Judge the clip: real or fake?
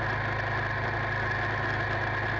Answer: real